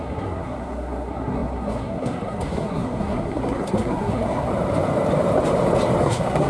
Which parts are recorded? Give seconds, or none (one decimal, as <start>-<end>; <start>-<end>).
4.5-6.0